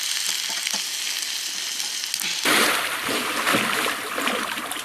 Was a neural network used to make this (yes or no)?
no